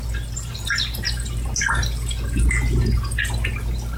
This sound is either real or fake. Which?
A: real